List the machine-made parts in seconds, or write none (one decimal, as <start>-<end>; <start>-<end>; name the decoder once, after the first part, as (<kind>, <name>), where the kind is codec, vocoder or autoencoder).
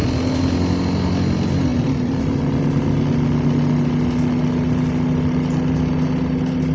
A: none